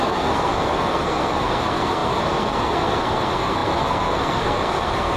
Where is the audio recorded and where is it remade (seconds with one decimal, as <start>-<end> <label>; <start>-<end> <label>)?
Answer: 0.0-5.2 remade